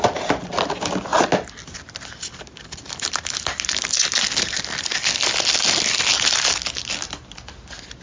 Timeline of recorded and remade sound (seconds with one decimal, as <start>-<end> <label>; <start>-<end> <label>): 0.0-8.0 recorded

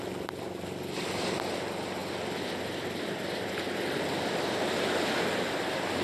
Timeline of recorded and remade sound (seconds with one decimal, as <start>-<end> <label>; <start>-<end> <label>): 0.0-2.0 recorded; 2.0-5.6 remade; 5.6-6.0 recorded

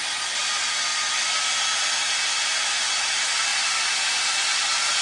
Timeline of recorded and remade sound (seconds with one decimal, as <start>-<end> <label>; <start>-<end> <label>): 0.0-5.0 recorded

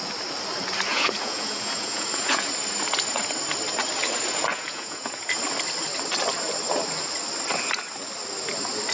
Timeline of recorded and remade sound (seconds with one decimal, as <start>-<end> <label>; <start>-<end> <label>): 0.0-0.9 recorded; 0.9-2.5 remade; 2.5-4.5 recorded; 4.5-5.3 remade; 5.3-8.9 recorded

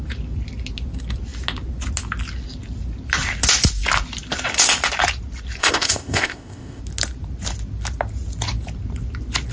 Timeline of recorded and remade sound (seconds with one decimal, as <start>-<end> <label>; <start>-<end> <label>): 0.0-5.6 recorded; 5.6-6.8 remade; 6.8-9.5 recorded

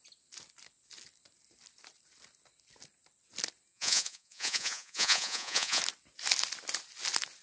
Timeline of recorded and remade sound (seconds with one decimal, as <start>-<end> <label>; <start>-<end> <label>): 0.0-3.7 recorded; 3.7-5.8 remade; 5.8-7.4 recorded

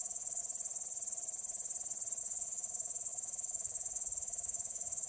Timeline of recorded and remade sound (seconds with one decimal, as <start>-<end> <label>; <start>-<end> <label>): 0.0-0.4 remade; 0.4-2.2 recorded; 2.2-5.1 remade